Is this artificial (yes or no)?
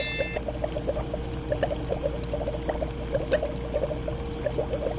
no